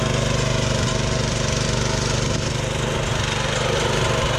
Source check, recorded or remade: recorded